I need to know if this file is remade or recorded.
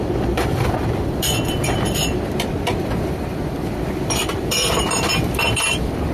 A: remade